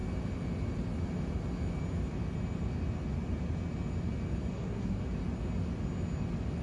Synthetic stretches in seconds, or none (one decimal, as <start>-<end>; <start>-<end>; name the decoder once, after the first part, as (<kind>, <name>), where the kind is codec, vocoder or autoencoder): 4.5-5.0 (codec, SNAC)